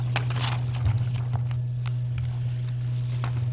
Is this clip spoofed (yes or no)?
no